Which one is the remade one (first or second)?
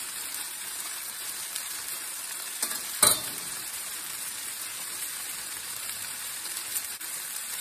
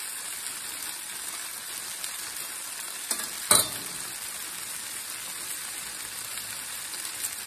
first